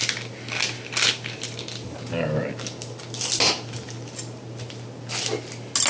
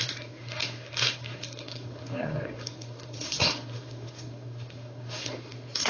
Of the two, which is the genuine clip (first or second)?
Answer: first